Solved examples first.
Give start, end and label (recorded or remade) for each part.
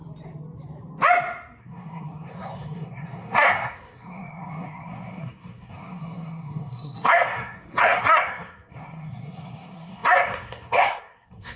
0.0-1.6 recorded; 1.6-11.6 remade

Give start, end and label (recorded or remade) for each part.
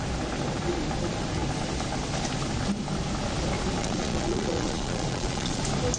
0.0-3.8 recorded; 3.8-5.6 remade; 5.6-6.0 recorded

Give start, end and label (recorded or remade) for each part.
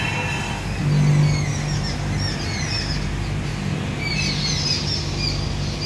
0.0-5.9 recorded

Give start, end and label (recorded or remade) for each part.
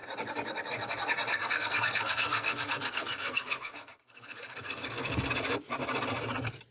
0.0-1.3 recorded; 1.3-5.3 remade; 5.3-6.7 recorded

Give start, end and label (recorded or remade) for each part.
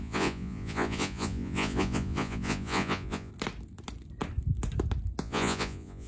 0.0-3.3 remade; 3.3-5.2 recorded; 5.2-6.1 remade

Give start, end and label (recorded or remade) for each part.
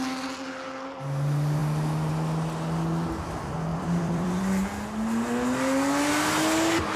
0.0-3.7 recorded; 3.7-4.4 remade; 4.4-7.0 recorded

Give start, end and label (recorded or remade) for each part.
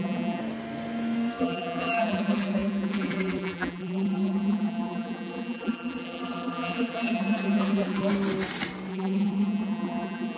0.0-0.4 remade; 0.4-1.4 recorded; 1.4-8.1 remade; 8.1-8.9 recorded; 8.9-10.4 remade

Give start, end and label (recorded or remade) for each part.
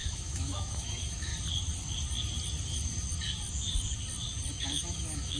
0.0-1.3 remade; 1.3-4.5 recorded; 4.5-5.4 remade